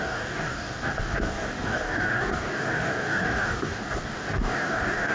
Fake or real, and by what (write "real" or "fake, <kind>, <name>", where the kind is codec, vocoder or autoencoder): fake, codec, DAC